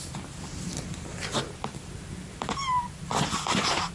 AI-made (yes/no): yes